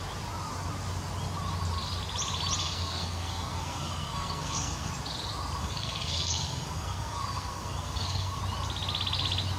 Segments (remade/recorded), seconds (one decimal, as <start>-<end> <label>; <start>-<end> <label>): 0.0-2.6 recorded; 2.6-4.9 remade; 4.9-5.6 recorded; 5.6-8.4 remade; 8.4-9.6 recorded